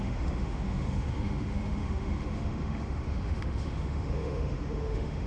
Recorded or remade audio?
remade